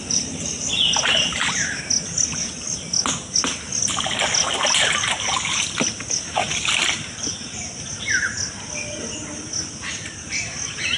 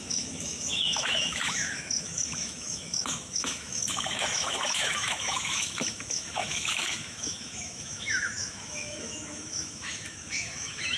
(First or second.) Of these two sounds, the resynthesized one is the second